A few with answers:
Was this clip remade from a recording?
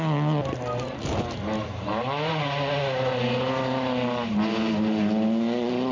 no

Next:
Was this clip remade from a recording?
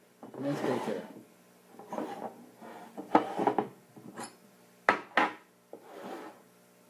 no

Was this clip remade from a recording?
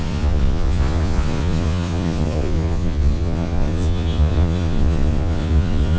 yes